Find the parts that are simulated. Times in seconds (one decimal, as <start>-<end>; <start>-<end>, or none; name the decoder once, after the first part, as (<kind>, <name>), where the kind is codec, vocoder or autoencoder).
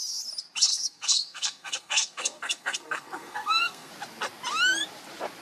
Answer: 0.7-3.9 (codec, SNAC)